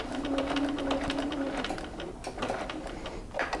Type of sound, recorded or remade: recorded